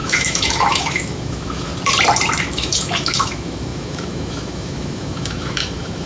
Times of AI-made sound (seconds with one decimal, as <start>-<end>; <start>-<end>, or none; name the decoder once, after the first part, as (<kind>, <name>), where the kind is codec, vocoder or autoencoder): 0.0-1.7 (autoencoder, DAC-VAE); 2.4-6.1